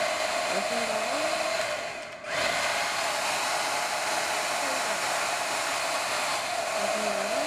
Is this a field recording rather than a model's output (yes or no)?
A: yes